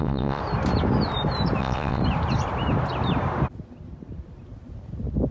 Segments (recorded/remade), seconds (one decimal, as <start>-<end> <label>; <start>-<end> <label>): 0.0-0.4 remade; 0.4-1.6 recorded; 1.6-2.0 remade; 2.0-5.3 recorded